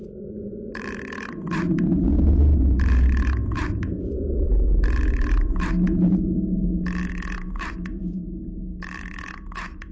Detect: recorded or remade recorded